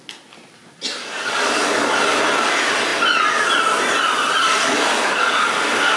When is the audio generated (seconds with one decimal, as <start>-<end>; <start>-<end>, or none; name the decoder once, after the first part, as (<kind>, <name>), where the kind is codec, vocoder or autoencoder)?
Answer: 1.0-1.9 (codec, DAC); 4.4-6.0